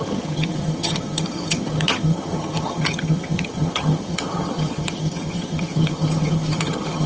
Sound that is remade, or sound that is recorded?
remade